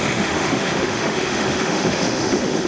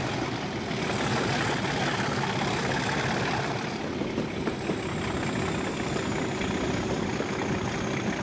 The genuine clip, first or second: second